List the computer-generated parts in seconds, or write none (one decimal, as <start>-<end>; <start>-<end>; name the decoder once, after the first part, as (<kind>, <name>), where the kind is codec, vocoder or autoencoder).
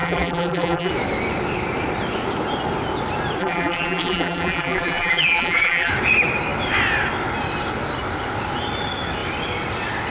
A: 0.0-0.9 (vocoder, BigVGAN v2); 3.4-5.9